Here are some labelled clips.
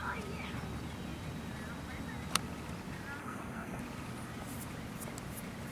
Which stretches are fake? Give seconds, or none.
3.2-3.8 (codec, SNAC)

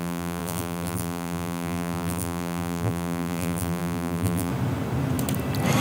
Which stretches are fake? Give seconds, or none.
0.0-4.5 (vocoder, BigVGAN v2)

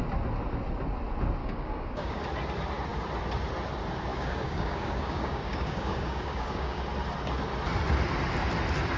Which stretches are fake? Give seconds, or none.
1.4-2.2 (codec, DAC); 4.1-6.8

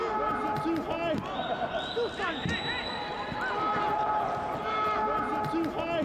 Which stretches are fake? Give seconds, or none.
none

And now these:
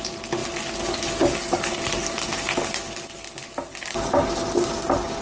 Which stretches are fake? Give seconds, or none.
none